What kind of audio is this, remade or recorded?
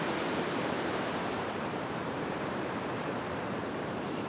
remade